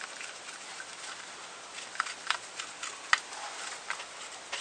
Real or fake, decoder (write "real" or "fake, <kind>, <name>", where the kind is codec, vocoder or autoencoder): real